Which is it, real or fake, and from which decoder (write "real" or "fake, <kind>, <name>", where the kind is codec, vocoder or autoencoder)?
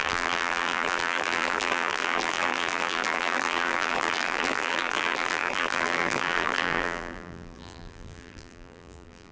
fake, vocoder, BigVGAN v2